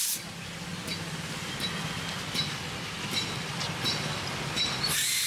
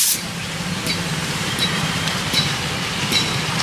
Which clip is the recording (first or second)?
first